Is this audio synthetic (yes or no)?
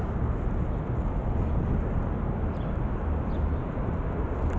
no